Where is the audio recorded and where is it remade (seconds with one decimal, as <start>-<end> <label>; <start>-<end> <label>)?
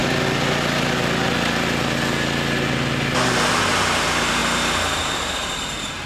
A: 0.0-3.5 recorded; 3.5-4.4 remade; 4.4-5.0 recorded; 5.0-6.1 remade